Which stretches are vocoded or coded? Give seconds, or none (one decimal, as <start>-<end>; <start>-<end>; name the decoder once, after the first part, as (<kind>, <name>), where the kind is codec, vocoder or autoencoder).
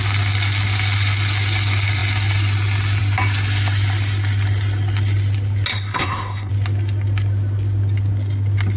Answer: 5.7-6.5 (codec, SNAC)